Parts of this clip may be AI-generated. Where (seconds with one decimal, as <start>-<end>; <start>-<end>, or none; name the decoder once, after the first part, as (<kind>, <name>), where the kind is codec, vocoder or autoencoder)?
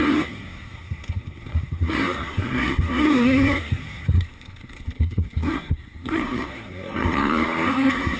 0.0-8.2 (codec, SNAC)